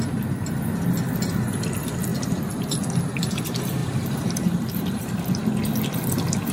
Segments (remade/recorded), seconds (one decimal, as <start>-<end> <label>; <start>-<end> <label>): 0.0-3.8 recorded; 3.8-5.3 remade; 5.3-6.5 recorded